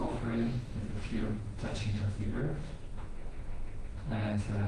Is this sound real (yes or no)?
no